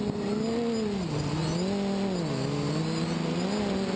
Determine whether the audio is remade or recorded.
recorded